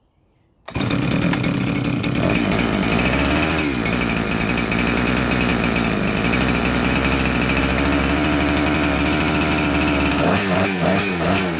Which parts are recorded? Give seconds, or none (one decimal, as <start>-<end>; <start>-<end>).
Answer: 0.0-10.1